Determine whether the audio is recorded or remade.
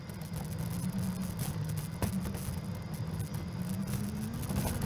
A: recorded